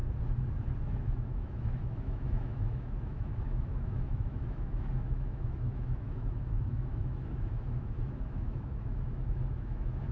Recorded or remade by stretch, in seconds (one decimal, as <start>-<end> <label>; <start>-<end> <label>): 0.0-0.9 recorded; 0.9-10.1 remade